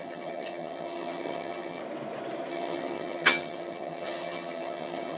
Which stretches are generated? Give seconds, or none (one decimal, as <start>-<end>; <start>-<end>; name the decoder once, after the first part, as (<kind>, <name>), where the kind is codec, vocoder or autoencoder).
0.0-1.8 (vocoder, HiFi-GAN); 2.5-5.2